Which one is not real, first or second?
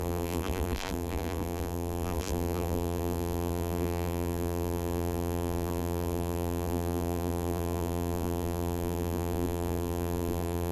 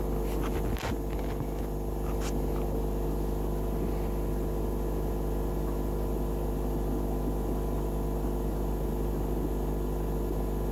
first